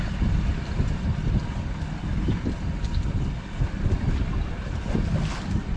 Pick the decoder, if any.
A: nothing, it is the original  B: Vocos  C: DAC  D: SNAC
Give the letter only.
A